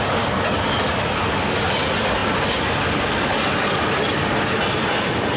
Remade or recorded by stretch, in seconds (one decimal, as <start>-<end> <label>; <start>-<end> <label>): 0.0-5.4 recorded